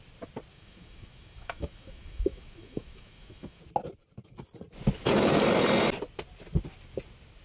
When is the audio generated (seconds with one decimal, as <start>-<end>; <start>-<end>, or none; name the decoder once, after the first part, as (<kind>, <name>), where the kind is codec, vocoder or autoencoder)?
0.5-3.6 (autoencoder, DAC-VAE)

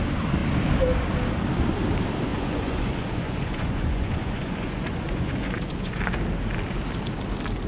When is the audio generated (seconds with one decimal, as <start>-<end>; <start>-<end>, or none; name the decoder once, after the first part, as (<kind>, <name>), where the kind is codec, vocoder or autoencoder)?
2.3-6.0 (vocoder, Vocos)

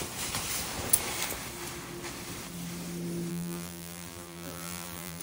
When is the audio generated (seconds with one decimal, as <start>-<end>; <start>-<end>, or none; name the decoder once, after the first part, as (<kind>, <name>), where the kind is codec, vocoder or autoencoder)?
3.3-5.2 (vocoder, BigVGAN v2)

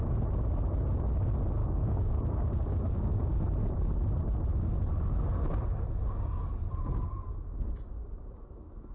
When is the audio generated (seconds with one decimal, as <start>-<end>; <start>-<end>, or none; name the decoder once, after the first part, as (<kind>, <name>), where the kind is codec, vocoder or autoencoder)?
1.6-3.4 (codec, DAC)

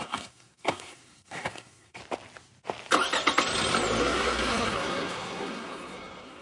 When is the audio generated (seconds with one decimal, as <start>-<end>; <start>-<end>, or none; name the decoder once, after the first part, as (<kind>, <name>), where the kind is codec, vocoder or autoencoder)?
0.0-2.0 (codec, SNAC); 4.0-6.4

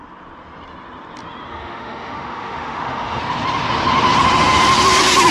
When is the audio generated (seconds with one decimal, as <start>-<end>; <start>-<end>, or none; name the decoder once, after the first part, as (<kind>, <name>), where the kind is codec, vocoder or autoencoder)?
1.5-3.2 (autoencoder, DAC-VAE)

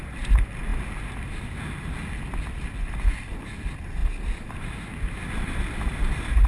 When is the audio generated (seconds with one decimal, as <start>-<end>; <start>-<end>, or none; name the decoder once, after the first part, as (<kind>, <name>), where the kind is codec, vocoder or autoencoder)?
none

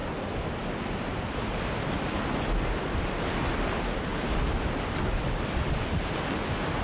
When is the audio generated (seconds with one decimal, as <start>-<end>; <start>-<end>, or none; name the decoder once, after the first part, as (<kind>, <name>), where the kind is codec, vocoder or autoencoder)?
none